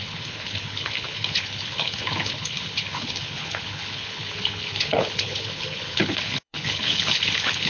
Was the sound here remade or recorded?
remade